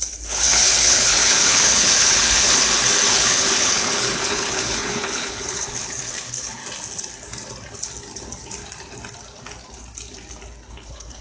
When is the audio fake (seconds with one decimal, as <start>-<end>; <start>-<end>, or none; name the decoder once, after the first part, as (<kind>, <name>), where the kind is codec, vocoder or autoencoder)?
0.0-2.6 (codec, HILCodec); 3.1-6.6; 10.7-11.2